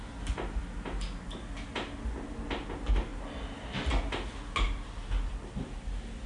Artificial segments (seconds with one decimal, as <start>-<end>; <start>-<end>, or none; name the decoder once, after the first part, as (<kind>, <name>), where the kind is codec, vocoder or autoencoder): none